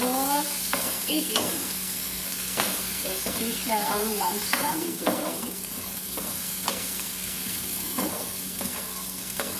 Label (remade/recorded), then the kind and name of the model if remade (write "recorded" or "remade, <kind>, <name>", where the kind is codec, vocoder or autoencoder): remade, codec, SNAC